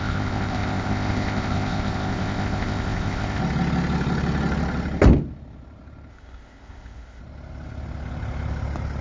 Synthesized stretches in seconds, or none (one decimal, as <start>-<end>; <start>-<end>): 0.0-3.4; 6.1-7.2